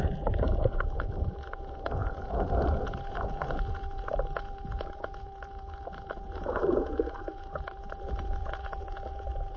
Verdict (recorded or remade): remade